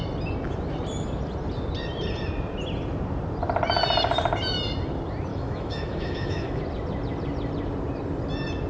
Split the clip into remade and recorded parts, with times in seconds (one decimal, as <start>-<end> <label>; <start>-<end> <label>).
0.0-5.3 recorded; 5.3-6.6 remade; 6.6-8.7 recorded